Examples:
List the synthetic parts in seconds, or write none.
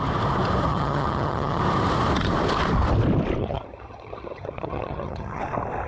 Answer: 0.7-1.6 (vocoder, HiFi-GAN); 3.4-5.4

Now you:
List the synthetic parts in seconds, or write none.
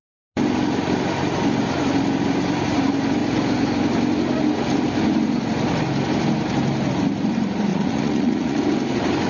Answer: 7.7-8.6 (vocoder, Vocos)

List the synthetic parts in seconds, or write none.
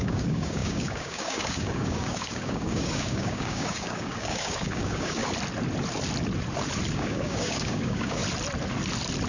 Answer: 0.0-5.2 (codec, DAC); 6.9-8.2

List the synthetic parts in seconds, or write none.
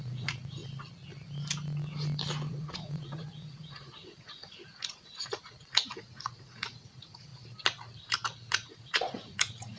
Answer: 0.0-0.6 (vocoder, Vocos); 2.5-7.3; 8.5-9.8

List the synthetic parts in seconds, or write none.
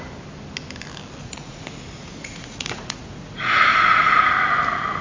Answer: 1.2-4.2 (vocoder, Vocos)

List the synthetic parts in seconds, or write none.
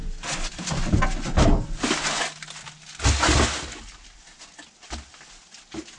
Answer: none